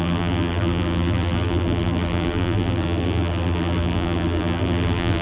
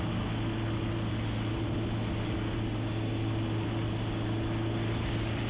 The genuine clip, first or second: second